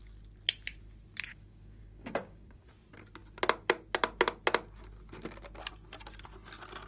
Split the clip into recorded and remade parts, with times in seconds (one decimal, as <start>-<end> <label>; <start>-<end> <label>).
0.0-1.3 recorded; 1.3-2.7 remade; 2.7-6.9 recorded